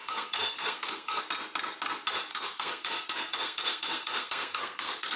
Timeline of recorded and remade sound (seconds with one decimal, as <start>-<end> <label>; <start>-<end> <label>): 0.0-1.2 remade; 1.2-2.3 recorded; 2.3-5.2 remade